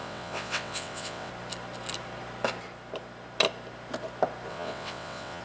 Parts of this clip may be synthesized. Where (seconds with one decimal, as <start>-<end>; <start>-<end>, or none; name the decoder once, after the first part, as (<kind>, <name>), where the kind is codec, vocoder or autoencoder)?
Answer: 0.0-1.3 (vocoder, WaveNeXt); 4.5-5.4

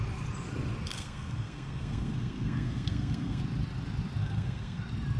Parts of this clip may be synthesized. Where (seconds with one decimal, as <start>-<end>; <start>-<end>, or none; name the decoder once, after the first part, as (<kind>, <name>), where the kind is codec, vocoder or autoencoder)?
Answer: 0.9-3.4 (codec, SNAC); 4.2-4.8

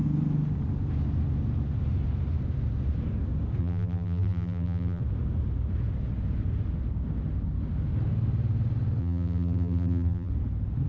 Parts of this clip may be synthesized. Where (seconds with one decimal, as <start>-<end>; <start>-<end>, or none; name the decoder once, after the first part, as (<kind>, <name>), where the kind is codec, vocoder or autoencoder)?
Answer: 3.6-5.0 (vocoder, BigVGAN v2); 9.0-10.3

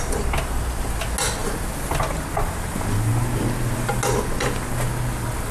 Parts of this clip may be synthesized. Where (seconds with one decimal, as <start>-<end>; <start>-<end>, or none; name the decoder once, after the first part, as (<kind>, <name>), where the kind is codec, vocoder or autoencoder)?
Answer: 1.4-2.0 (vocoder, BigVGAN v2)

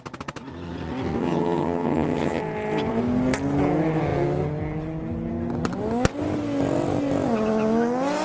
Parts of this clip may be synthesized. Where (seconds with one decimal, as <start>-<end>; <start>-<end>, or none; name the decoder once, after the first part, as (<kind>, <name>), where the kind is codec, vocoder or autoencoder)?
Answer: 1.2-2.4 (vocoder, HiFi-GAN)

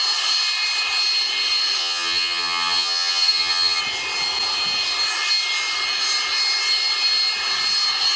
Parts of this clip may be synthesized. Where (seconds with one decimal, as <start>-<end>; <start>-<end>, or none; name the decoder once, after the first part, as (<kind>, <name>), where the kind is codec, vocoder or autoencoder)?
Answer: 1.8-3.8 (vocoder, HiFi-GAN)

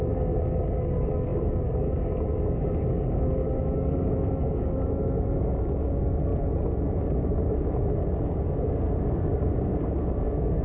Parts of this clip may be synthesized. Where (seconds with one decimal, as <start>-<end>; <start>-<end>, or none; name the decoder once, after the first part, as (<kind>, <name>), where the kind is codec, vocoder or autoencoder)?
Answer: 0.0-6.3 (codec, DAC); 7.0-10.6